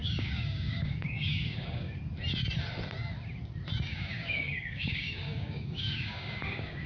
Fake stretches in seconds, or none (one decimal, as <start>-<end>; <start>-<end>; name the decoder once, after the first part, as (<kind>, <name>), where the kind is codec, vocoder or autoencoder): 0.0-1.9 (codec, DAC); 3.9-6.9